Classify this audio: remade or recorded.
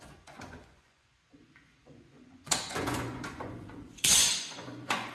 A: remade